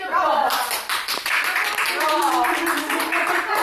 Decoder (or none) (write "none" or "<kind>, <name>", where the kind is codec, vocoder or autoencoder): vocoder, BigVGAN v2